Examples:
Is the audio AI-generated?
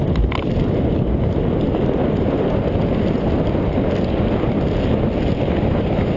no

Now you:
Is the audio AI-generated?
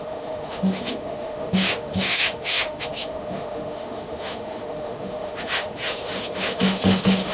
yes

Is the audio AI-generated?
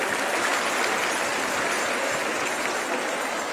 no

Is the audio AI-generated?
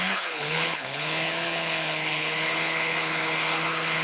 yes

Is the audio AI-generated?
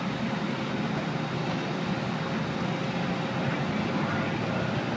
no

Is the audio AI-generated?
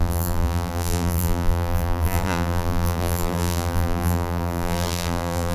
yes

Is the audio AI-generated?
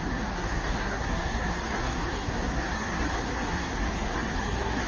yes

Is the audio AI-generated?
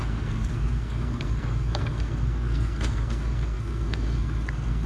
yes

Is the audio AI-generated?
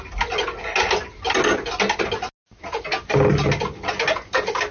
no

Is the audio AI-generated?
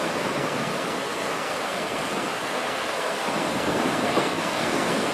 yes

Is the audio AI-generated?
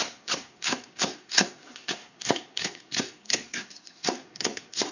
yes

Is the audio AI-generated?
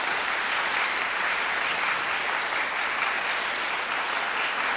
no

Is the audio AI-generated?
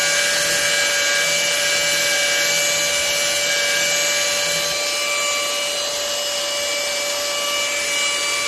no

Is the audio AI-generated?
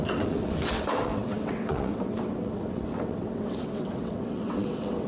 yes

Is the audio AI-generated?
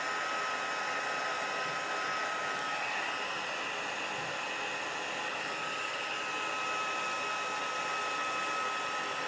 no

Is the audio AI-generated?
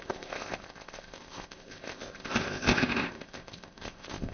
yes